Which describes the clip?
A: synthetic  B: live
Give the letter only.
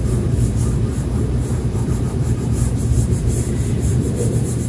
A